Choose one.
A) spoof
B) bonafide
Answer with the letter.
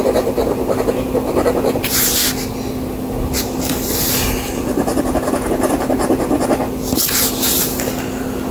B